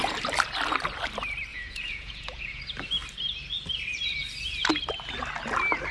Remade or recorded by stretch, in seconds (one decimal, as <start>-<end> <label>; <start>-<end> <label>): 0.0-1.5 recorded; 1.5-2.6 remade; 2.6-5.9 recorded